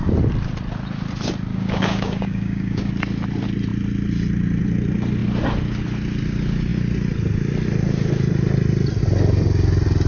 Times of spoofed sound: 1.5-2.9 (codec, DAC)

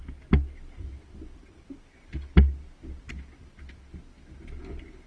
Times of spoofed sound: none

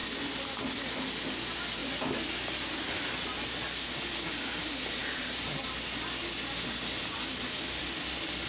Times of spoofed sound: none

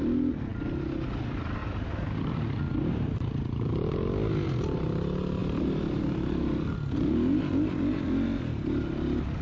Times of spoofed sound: 5.4-6.0 (vocoder, BigVGAN v2); 8.5-9.4